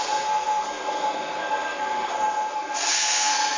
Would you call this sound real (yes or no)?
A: no